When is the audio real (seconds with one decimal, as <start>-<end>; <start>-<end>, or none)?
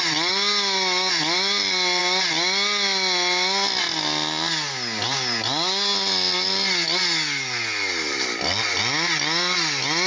0.0-10.1